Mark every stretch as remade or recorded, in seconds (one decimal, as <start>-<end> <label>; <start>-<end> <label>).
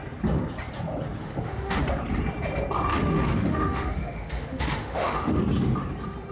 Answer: 0.0-1.2 recorded; 1.2-1.8 remade; 1.8-2.9 recorded; 2.9-5.4 remade; 5.4-6.3 recorded